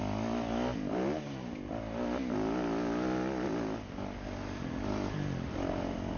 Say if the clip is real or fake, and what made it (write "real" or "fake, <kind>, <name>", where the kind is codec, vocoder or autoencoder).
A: real